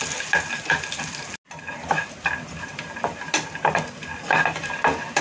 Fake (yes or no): no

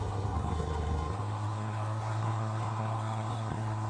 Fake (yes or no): yes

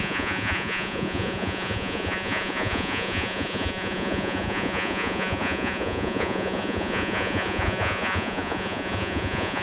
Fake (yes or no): yes